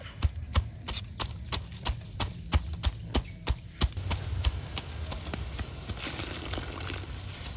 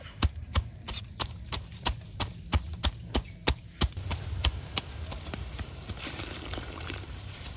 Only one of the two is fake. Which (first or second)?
second